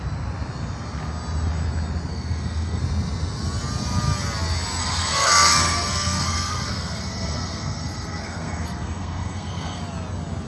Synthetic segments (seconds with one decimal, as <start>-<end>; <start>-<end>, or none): 2.1-2.8; 4.8-9.8